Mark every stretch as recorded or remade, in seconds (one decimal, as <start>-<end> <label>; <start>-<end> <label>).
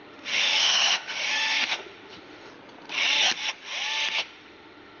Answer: 0.0-2.5 remade; 2.5-4.2 recorded; 4.2-5.0 remade